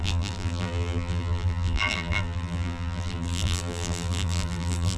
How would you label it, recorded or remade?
remade